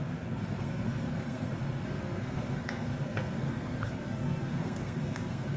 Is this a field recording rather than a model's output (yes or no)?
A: no